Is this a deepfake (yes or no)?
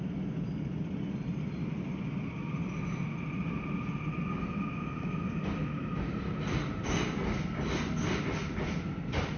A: no